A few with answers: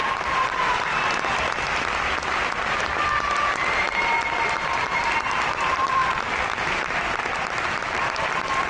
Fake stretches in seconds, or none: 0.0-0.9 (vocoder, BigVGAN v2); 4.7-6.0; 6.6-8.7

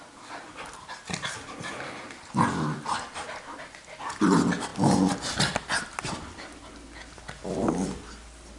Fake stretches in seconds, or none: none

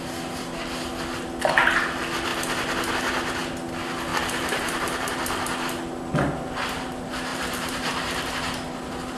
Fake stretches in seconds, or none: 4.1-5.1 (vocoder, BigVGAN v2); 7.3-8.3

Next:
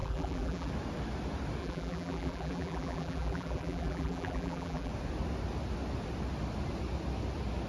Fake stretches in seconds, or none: 0.0-0.7 (vocoder, BigVGAN v2); 1.6-4.9

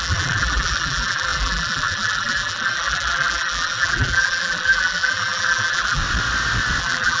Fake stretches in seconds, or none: 0.0-6.0 (vocoder, BigVGAN v2); 6.8-7.2

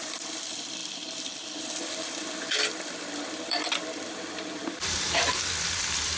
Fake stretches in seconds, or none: 0.0-6.2 (vocoder, BigVGAN v2)